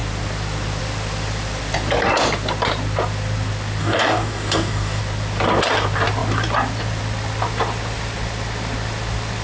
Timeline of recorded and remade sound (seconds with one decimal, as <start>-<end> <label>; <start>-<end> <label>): 0.0-3.8 recorded; 3.8-5.0 remade; 5.0-9.4 recorded